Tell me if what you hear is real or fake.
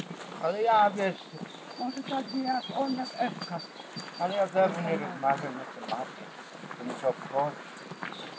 real